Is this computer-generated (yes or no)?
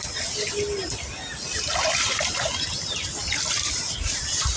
no